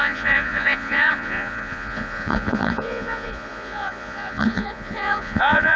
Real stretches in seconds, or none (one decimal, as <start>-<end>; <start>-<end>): none